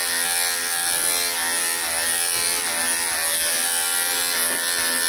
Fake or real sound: real